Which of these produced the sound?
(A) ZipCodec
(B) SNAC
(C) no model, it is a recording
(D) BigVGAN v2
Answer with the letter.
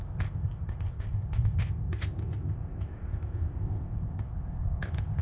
A